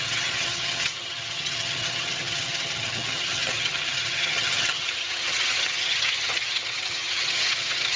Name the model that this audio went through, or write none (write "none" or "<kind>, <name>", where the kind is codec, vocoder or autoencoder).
vocoder, HiFi-GAN